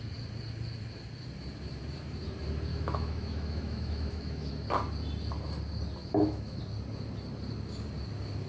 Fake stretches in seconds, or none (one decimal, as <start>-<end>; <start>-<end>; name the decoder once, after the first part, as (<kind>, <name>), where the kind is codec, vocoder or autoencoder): 2.7-4.5 (autoencoder, DAC-VAE); 6.0-6.6